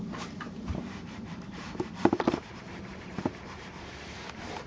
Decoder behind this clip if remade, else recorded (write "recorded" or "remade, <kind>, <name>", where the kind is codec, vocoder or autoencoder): remade, vocoder, BigVGAN v2